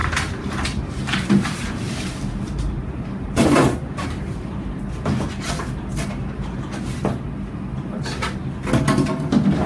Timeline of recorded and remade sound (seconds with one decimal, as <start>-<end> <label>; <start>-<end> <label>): 0.0-4.8 remade; 4.8-9.7 recorded